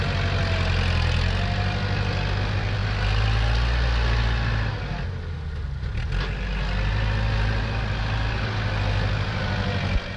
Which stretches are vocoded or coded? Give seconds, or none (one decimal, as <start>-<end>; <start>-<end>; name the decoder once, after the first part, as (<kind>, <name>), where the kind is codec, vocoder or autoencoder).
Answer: none